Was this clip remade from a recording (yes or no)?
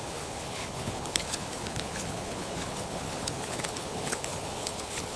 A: yes